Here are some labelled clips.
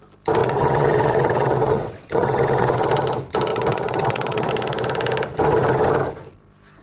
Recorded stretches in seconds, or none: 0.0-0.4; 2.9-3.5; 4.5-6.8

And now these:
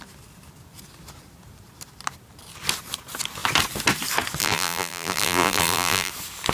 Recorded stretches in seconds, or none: 0.0-4.4; 6.1-6.5

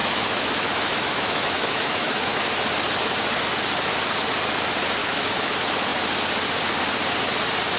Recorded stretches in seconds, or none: 2.4-5.0; 5.5-7.8

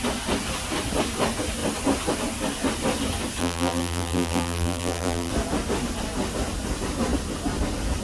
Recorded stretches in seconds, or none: 0.0-3.4; 5.3-8.0

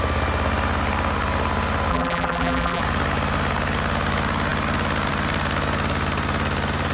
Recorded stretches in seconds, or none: 0.0-1.9; 2.8-6.9

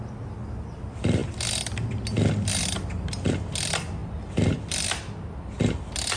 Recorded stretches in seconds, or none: 0.0-6.2